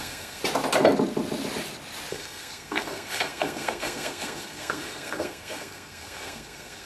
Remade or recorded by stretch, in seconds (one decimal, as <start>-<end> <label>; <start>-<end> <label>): 0.0-0.4 remade; 0.4-2.1 recorded; 2.1-6.9 remade